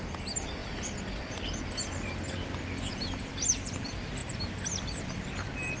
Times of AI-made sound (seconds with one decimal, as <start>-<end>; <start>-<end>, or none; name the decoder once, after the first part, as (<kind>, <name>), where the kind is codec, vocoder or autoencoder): none